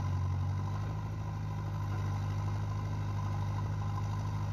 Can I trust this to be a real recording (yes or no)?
yes